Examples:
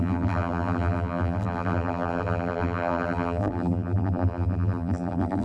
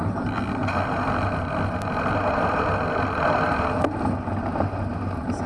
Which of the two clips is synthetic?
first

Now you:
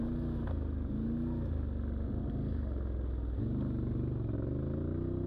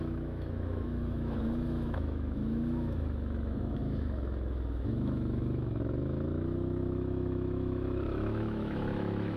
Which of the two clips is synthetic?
second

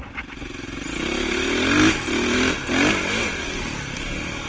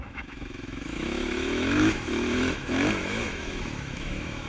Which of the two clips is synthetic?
second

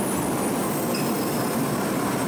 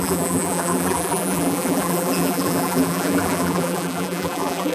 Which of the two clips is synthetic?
second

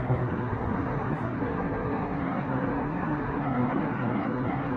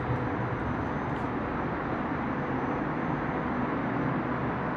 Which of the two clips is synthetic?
first